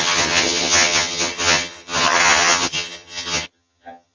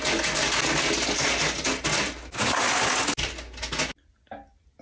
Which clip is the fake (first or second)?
first